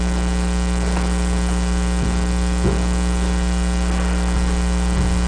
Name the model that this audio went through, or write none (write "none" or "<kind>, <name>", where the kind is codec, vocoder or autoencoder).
none